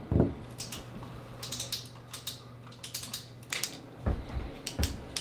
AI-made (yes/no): no